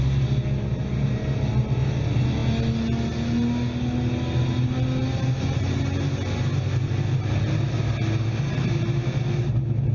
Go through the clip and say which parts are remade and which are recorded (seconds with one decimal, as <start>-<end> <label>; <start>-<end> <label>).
0.0-9.9 recorded